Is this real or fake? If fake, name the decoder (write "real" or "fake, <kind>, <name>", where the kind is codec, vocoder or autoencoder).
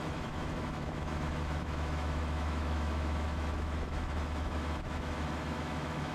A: fake, autoencoder, DAC-VAE